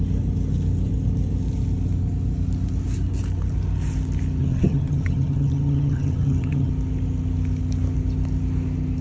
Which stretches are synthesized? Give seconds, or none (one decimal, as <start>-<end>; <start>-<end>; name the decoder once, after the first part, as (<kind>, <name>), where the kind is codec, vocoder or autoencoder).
4.4-6.7 (vocoder, HiFi-GAN)